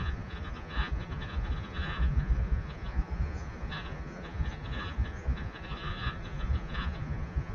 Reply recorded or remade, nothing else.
remade